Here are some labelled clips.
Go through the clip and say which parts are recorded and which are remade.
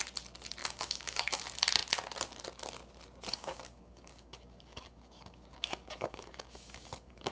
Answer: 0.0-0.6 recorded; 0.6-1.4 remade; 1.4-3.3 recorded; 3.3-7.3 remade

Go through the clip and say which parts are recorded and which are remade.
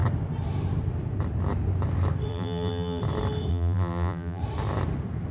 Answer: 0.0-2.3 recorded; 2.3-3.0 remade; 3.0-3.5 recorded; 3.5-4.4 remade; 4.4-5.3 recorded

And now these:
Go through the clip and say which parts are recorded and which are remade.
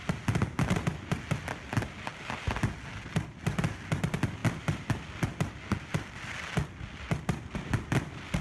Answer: 0.0-8.4 recorded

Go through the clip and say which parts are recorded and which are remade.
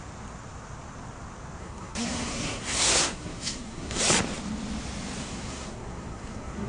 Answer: 0.0-1.6 recorded; 1.6-4.0 remade; 4.0-5.2 recorded; 5.2-6.7 remade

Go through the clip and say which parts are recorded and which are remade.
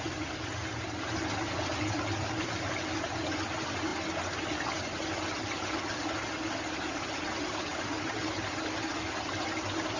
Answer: 0.0-10.0 recorded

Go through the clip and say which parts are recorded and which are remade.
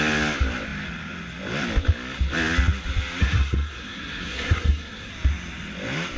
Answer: 0.0-3.2 recorded; 3.2-5.1 remade; 5.1-6.2 recorded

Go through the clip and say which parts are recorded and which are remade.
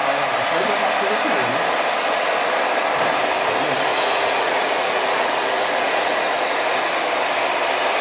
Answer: 0.0-3.9 recorded; 3.9-6.9 remade; 6.9-8.0 recorded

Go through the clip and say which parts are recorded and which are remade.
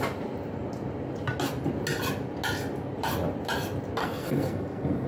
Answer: 0.0-4.0 recorded; 4.0-5.1 remade